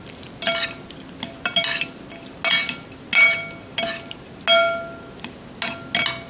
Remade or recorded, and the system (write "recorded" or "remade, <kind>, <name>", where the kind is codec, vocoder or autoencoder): recorded